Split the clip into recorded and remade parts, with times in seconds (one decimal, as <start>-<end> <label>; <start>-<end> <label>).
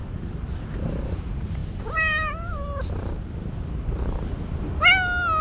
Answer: 0.0-5.4 recorded